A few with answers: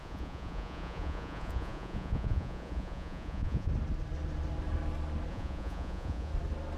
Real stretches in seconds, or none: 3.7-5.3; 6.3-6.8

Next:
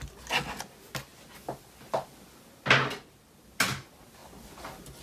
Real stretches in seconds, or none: 0.0-5.0

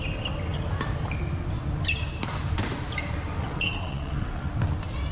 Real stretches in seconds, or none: 0.0-3.4; 4.5-5.1

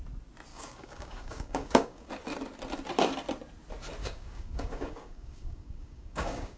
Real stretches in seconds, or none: 0.0-0.5; 2.1-4.0

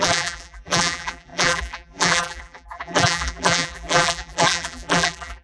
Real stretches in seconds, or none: none

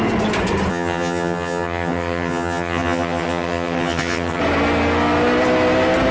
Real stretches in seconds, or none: 0.0-0.7; 4.4-6.1

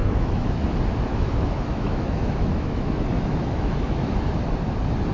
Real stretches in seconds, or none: 0.6-1.1; 4.2-5.1